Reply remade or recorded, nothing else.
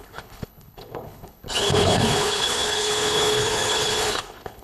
remade